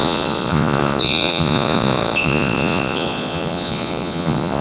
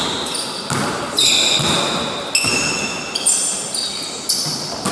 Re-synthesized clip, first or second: first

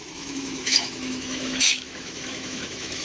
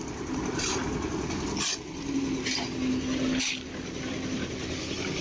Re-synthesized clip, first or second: first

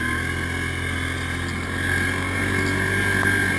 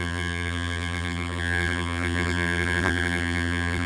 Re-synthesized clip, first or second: second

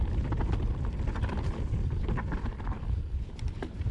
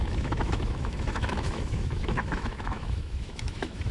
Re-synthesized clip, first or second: second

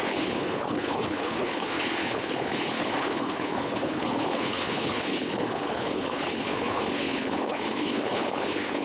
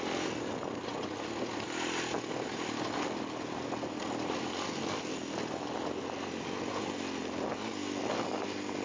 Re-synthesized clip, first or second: first